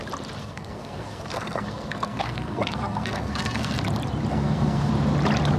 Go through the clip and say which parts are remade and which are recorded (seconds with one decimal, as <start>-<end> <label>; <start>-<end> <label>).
0.0-0.4 recorded; 0.4-3.8 remade; 3.8-4.3 recorded; 4.3-4.9 remade; 4.9-5.6 recorded